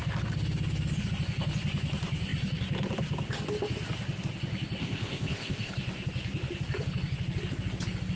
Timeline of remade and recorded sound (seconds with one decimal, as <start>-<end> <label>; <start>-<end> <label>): 0.0-4.8 recorded; 4.8-5.7 remade; 5.7-8.2 recorded